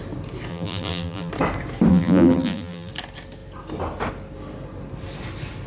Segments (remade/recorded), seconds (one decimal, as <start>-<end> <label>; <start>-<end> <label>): 0.0-0.5 recorded; 0.5-1.3 remade; 1.3-1.9 recorded; 1.9-2.9 remade; 2.9-5.7 recorded